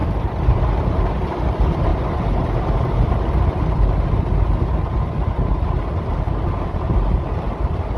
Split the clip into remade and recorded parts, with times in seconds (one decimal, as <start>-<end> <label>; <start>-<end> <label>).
0.0-8.0 recorded

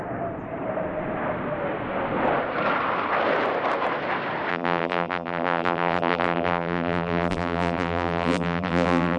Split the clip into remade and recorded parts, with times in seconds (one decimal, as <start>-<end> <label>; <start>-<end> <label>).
0.0-4.5 recorded; 4.5-9.2 remade

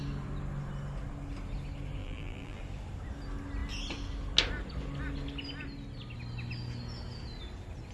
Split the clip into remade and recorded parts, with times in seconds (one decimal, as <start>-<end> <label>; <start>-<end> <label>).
0.0-2.0 recorded; 2.0-2.6 remade; 2.6-7.9 recorded

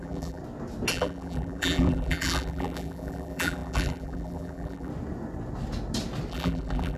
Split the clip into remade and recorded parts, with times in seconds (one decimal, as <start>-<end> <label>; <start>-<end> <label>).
0.0-0.4 remade; 0.4-0.9 recorded; 0.9-4.9 remade; 4.9-6.3 recorded; 6.3-7.0 remade

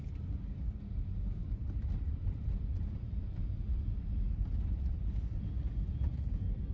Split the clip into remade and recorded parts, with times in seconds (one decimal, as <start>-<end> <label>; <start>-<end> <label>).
0.0-1.4 recorded; 1.4-5.4 remade; 5.4-6.7 recorded

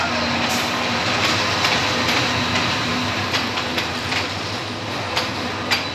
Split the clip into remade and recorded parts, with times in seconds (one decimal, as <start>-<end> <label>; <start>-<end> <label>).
0.0-2.9 recorded; 2.9-4.6 remade; 4.6-5.9 recorded